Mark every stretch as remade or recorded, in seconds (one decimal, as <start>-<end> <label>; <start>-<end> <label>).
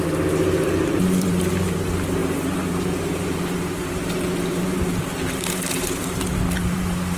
0.0-7.2 remade